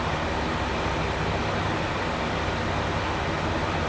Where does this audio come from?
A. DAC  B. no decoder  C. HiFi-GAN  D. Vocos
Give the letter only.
B